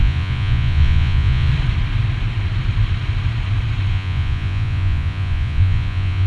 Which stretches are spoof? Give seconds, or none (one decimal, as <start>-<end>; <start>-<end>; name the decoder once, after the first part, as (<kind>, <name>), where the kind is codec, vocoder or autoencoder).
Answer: 0.0-1.5 (vocoder, Vocos); 3.9-6.3